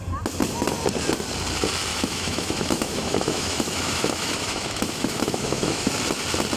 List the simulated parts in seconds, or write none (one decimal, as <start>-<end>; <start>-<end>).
1.9-5.9